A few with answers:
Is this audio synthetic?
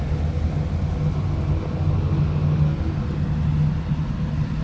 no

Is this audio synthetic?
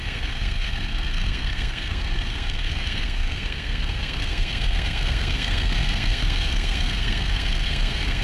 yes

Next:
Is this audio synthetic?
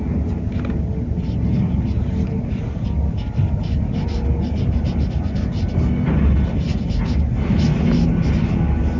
no